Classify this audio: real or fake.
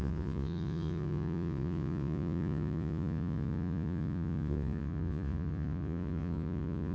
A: fake